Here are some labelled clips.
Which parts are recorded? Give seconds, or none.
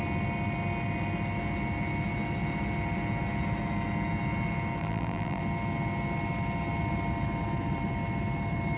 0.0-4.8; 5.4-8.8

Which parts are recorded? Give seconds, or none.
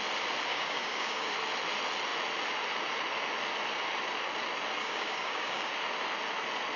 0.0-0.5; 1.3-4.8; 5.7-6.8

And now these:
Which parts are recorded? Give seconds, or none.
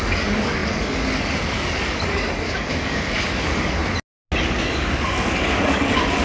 3.8-4.4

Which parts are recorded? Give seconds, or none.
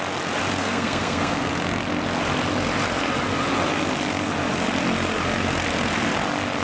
0.0-0.6; 1.5-6.6